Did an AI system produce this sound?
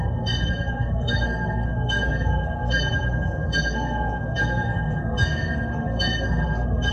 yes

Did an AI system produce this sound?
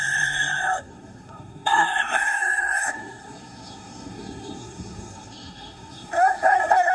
yes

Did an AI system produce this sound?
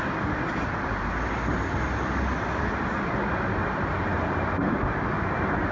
no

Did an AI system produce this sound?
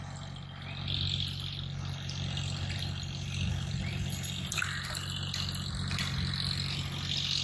no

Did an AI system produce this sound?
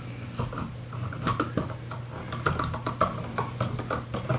no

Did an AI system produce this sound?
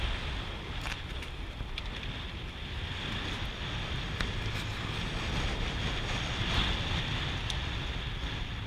no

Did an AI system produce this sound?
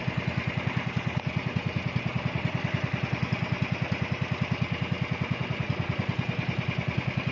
no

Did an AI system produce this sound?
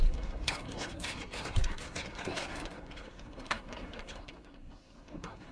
yes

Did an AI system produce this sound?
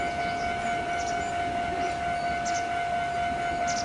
no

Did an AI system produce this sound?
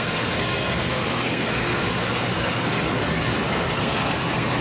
yes